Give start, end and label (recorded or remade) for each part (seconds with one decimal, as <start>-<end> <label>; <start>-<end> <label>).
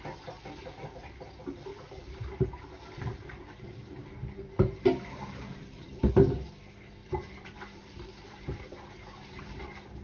0.0-1.7 recorded; 1.7-6.1 remade; 6.1-7.0 recorded; 7.0-9.6 remade; 9.6-10.0 recorded